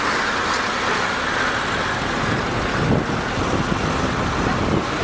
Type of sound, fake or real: real